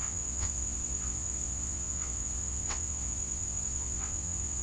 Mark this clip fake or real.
fake